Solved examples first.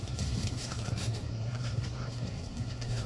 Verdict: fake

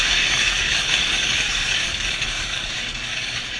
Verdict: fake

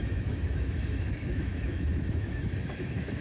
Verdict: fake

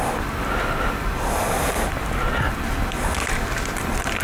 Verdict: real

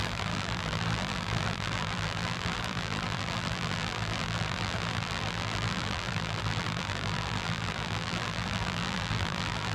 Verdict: fake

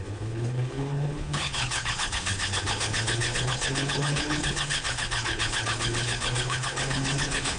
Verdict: fake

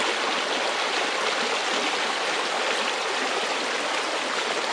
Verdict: real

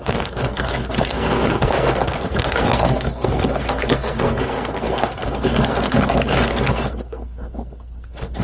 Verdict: fake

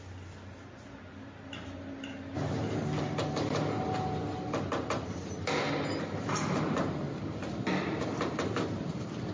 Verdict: real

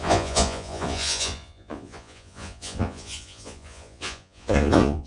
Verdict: fake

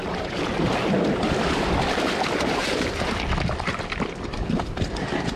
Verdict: fake